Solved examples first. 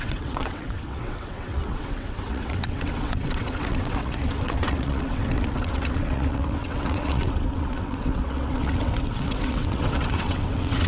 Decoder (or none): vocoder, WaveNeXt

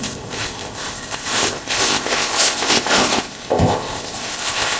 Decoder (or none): codec, ZipCodec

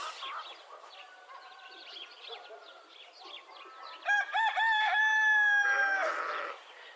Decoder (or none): none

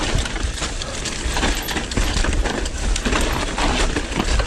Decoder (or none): none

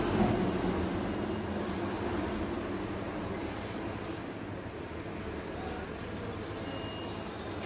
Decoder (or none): none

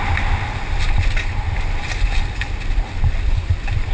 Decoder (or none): none